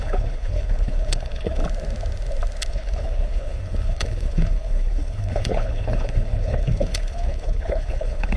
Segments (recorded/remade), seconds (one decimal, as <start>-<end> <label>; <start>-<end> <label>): 0.0-1.6 remade; 1.6-2.7 recorded; 2.7-8.4 remade